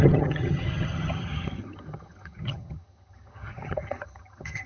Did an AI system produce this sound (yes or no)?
yes